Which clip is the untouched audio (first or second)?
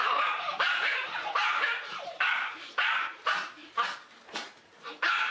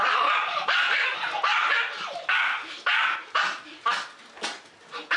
second